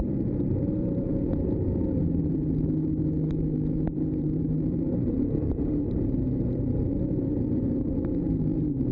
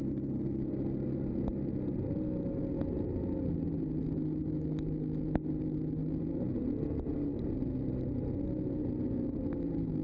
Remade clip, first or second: first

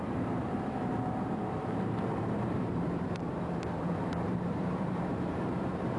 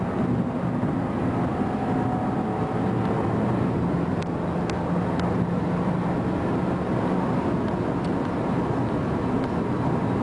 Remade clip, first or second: first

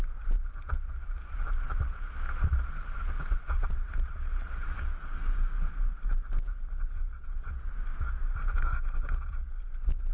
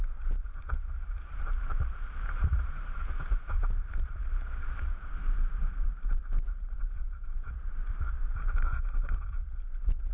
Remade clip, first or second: second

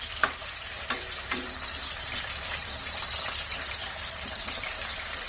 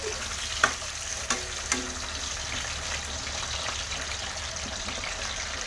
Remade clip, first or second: first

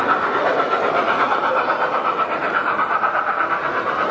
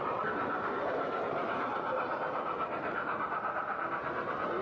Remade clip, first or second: first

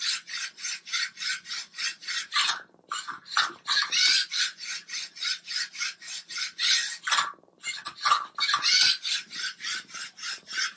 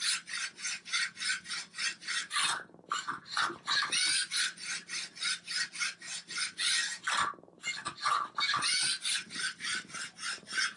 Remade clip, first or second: first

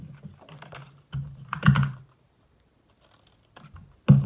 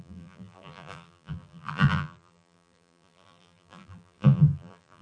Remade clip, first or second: second